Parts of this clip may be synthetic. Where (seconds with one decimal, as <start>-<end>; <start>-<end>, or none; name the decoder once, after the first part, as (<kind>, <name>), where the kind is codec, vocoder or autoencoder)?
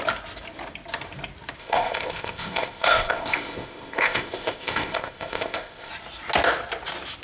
1.6-5.9 (codec, ZipCodec)